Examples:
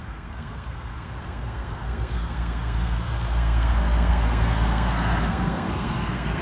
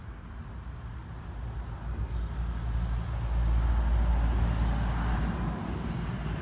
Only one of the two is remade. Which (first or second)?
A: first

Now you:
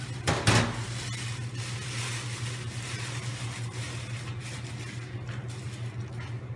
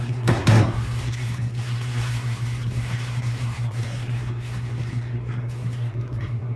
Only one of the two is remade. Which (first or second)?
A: second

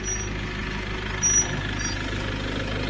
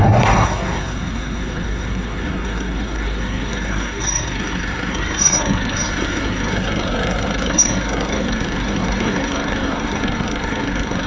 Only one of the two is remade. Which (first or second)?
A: second